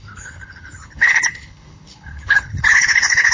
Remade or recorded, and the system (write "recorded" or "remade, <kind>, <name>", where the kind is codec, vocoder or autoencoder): remade, codec, HILCodec